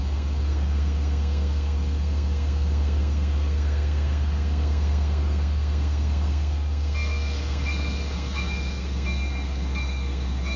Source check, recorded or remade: remade